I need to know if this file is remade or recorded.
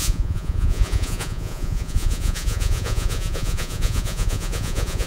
remade